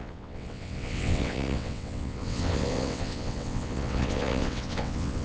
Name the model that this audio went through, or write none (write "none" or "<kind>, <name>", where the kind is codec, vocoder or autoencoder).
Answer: vocoder, WaveNeXt